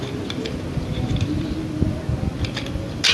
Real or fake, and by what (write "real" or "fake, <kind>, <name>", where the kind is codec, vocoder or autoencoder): real